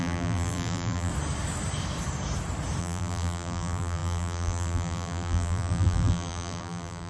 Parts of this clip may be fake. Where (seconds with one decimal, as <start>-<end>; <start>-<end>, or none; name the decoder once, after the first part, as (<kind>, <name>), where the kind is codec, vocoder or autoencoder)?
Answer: 0.0-1.1 (vocoder, BigVGAN v2); 2.8-7.1